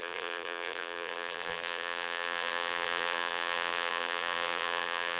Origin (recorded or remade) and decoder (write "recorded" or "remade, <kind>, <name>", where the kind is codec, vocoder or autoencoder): remade, vocoder, BigVGAN v2